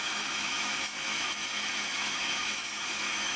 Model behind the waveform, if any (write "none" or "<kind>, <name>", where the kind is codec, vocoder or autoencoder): autoencoder, DAC-VAE